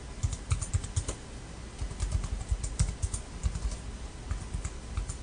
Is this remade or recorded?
recorded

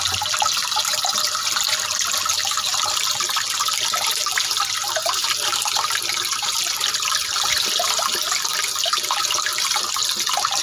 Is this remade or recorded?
recorded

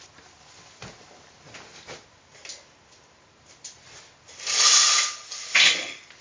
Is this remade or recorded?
recorded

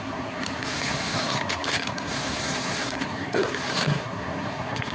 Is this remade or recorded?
remade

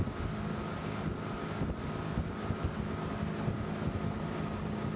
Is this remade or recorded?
recorded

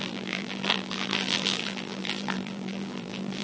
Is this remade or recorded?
remade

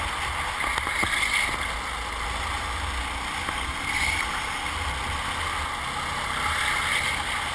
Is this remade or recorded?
recorded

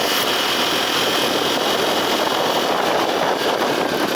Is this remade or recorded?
recorded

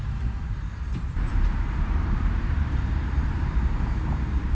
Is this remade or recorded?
remade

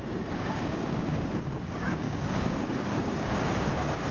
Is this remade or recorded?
remade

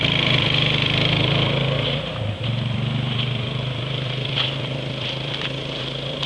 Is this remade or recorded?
remade